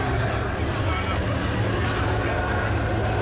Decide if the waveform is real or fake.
real